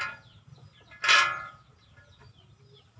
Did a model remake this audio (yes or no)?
no